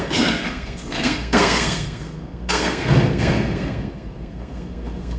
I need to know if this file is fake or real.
fake